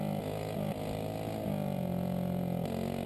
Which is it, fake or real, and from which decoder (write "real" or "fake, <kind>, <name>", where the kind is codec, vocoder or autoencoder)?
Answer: real